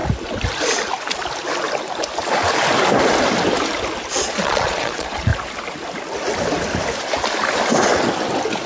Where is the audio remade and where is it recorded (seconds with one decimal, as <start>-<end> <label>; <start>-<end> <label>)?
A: 0.0-4.2 recorded; 4.2-5.3 remade; 5.3-8.7 recorded